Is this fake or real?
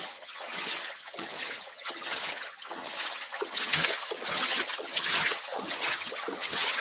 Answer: fake